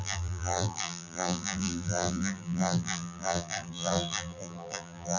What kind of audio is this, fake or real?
fake